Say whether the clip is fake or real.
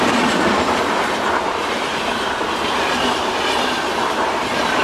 fake